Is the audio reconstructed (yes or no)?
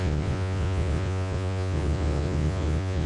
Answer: yes